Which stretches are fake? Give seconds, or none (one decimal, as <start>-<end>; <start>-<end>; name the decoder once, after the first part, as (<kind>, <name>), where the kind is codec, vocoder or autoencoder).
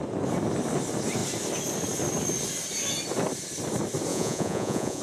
4.1-5.0 (vocoder, Vocos)